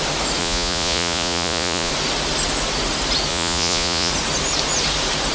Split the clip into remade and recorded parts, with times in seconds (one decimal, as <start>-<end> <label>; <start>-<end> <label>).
0.0-0.4 recorded; 0.4-1.9 remade; 1.9-3.3 recorded; 3.3-4.1 remade; 4.1-5.3 recorded